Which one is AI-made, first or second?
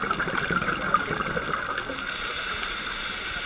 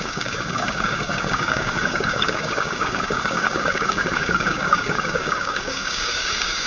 second